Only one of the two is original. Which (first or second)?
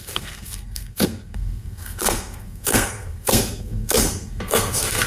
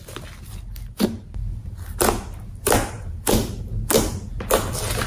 second